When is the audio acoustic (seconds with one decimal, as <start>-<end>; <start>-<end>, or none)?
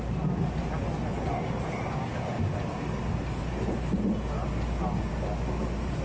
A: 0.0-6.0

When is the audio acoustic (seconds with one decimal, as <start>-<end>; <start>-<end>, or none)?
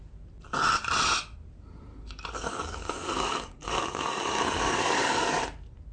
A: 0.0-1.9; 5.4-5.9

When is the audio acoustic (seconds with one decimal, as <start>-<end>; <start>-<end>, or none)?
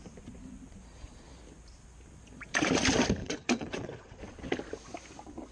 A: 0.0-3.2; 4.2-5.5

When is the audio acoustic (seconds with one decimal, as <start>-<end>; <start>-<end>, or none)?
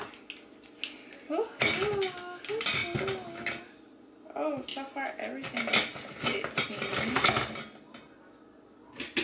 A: 0.0-9.2